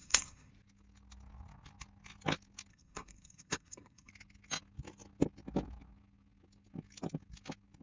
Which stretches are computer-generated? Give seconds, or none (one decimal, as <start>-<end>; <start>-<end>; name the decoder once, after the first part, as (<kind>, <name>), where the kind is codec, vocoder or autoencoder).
0.0-0.5 (codec, SNAC); 2.7-4.1

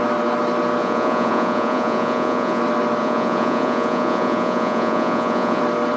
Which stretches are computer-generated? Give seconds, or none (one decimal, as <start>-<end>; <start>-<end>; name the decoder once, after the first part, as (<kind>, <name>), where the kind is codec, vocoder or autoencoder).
0.8-2.6 (vocoder, Vocos); 3.0-5.6

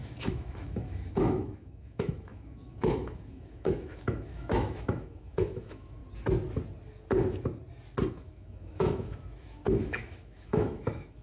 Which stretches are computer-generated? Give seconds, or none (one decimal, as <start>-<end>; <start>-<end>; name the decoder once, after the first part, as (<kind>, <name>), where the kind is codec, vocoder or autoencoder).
0.0-6.0 (autoencoder, DAC-VAE); 8.1-11.2

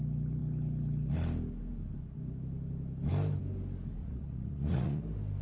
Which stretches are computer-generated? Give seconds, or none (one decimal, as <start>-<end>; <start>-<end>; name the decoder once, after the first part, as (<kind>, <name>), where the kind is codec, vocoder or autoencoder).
4.0-5.0 (vocoder, Vocos)

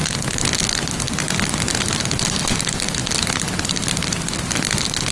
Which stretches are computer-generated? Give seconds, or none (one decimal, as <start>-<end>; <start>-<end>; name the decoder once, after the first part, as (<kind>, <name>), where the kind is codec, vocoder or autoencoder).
none

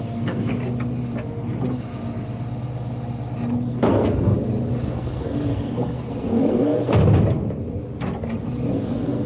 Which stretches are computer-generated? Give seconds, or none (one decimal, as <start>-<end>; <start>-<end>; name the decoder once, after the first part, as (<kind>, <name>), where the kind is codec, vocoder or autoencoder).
0.0-0.5 (codec, SNAC); 3.7-4.3; 4.9-7.0; 8.7-9.3

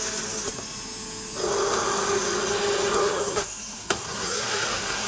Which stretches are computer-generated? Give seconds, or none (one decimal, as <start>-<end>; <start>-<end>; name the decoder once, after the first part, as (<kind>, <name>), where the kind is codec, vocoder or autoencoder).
3.0-5.1 (codec, SNAC)

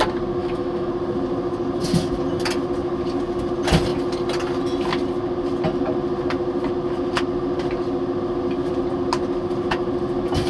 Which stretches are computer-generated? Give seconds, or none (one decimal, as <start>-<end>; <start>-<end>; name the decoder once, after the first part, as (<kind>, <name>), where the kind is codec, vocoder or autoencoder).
0.4-0.9 (autoencoder, DAC-VAE)